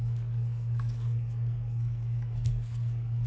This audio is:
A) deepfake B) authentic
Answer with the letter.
A